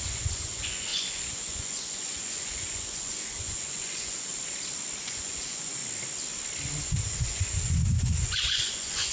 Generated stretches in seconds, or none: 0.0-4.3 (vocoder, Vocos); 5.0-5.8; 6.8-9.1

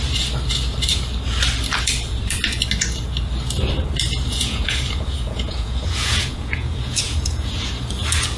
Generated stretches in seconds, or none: 4.3-7.7 (vocoder, Vocos)

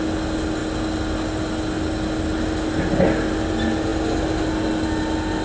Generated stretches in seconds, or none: none